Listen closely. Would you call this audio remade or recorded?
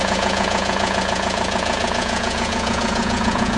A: remade